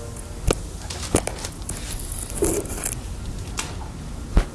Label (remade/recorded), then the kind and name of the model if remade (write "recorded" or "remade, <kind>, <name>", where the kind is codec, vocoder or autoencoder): recorded